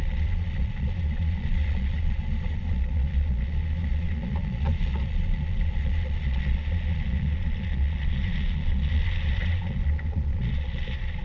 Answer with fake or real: fake